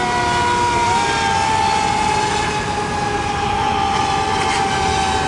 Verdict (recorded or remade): recorded